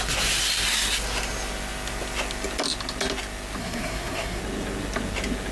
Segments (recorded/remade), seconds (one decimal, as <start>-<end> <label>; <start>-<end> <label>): 0.0-3.6 recorded; 3.6-4.4 remade; 4.4-5.5 recorded